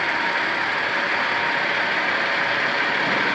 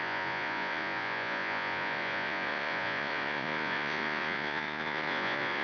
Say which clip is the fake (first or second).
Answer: second